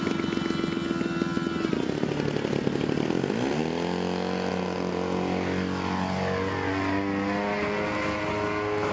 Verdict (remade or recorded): recorded